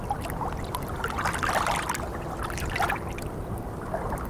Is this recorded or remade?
recorded